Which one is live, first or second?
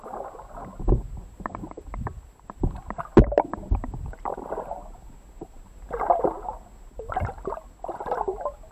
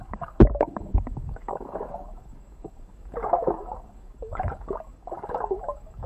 first